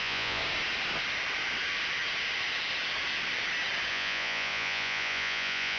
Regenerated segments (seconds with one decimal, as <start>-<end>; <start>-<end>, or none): 0.0-0.4; 3.9-5.8